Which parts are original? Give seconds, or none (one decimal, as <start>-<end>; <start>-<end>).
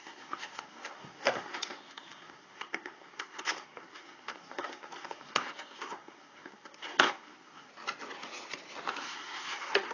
7.7-8.9